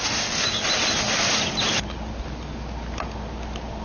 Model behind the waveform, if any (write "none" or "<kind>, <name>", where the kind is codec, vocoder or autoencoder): none